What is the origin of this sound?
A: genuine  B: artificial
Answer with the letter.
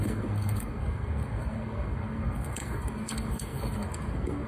B